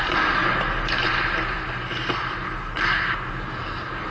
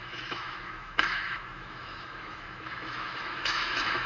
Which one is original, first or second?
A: first